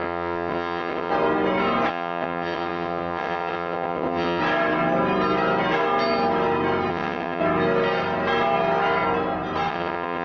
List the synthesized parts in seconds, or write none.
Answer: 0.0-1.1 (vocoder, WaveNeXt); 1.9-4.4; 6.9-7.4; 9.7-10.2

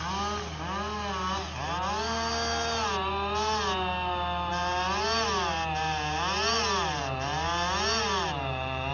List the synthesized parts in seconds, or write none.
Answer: none

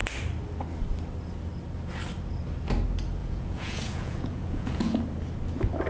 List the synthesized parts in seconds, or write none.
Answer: 3.2-5.0 (vocoder, Vocos)